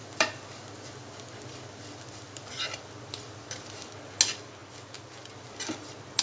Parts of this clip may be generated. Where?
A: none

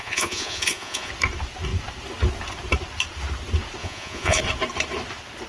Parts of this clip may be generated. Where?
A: 0.0-1.1 (vocoder, Vocos); 3.8-4.4